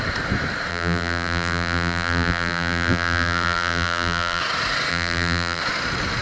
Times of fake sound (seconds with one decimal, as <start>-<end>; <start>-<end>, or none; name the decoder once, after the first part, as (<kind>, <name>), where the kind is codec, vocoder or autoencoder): 0.7-4.4 (vocoder, BigVGAN v2); 4.9-5.6